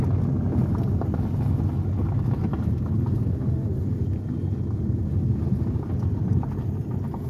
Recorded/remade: recorded